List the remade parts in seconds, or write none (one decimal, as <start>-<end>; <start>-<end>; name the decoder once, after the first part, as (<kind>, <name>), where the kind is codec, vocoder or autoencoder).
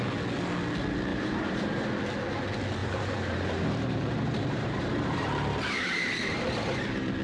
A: 1.1-1.9 (vocoder, BigVGAN v2); 2.8-6.8